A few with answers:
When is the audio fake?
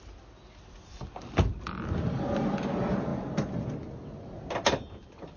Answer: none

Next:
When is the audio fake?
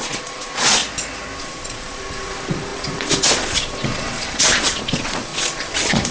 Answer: 0.0-0.8 (vocoder, Vocos); 1.4-6.1